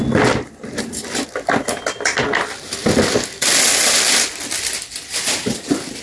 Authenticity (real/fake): real